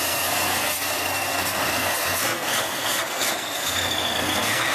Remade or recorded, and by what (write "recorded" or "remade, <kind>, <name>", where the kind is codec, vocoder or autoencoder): remade, codec, SNAC